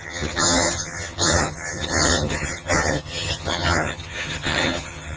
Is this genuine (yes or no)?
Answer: no